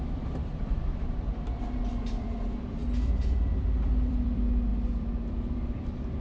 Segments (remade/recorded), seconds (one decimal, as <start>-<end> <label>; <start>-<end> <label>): 0.0-6.2 remade